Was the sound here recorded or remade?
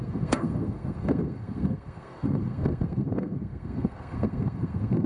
remade